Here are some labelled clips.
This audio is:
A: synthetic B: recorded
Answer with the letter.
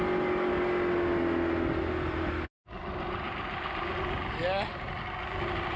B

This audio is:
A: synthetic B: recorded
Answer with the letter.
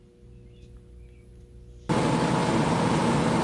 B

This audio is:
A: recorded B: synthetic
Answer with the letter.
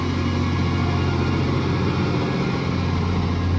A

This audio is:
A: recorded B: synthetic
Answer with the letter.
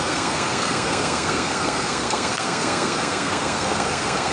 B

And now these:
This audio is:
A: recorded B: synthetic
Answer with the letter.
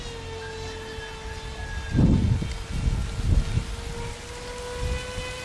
A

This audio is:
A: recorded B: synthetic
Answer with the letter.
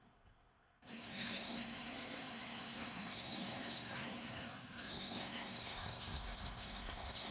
B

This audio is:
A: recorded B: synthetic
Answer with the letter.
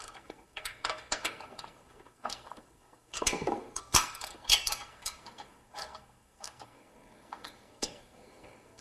B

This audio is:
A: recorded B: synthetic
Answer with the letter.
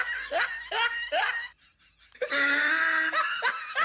A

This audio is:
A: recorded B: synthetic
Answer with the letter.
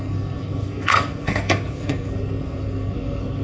B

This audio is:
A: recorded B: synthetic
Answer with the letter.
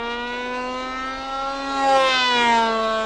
A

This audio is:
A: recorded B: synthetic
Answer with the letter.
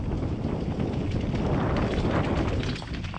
A